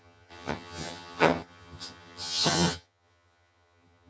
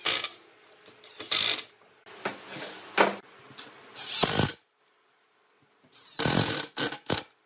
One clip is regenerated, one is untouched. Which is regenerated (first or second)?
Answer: first